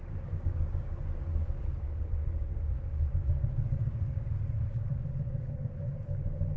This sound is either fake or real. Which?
fake